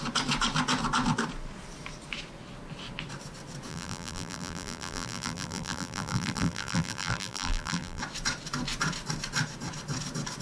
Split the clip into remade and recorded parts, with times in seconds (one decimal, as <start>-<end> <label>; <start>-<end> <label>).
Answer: 0.0-3.7 recorded; 3.7-8.0 remade; 8.0-10.4 recorded